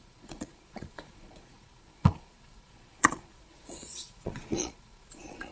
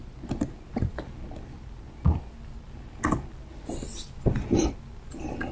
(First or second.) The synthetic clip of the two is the first